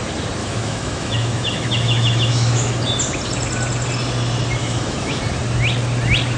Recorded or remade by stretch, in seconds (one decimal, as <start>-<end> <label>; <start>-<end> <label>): 0.0-0.4 recorded; 0.4-2.7 remade; 2.7-4.6 recorded; 4.6-5.2 remade; 5.2-6.4 recorded